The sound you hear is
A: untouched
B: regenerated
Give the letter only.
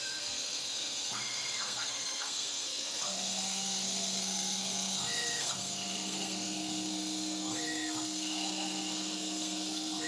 B